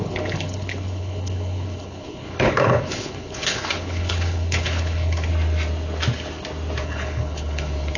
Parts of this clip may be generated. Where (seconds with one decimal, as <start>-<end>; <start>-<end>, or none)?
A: 0.0-5.3; 6.8-8.0